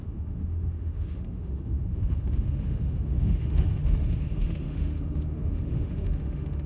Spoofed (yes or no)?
yes